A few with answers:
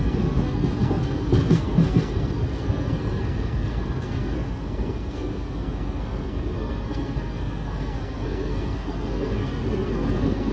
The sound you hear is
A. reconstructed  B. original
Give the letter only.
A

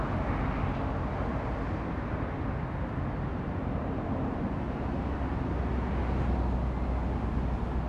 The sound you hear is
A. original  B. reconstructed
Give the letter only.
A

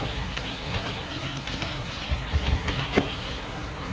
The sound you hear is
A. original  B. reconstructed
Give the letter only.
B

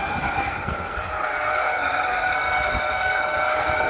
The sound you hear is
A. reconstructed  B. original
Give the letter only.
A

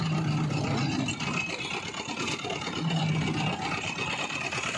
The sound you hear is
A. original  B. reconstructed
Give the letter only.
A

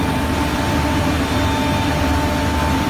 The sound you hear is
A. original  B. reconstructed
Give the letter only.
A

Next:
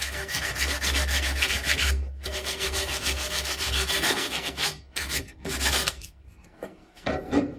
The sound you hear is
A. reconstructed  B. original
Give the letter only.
A